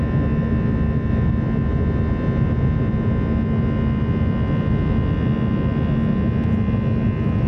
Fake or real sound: real